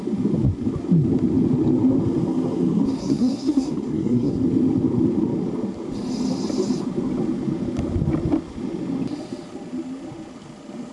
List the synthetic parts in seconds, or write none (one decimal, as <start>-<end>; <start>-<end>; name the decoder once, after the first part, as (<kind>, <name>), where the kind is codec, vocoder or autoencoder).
3.0-4.3 (codec, SNAC)